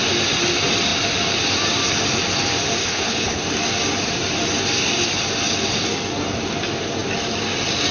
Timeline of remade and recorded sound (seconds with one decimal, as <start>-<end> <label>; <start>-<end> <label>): 0.0-2.8 recorded; 2.8-3.4 remade; 3.4-7.9 recorded